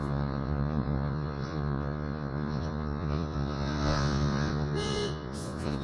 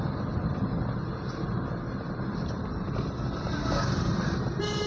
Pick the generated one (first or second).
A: first